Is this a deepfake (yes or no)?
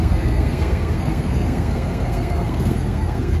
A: yes